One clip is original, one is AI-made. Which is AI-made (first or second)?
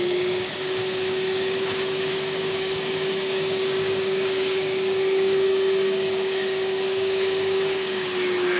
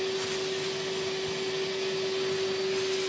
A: first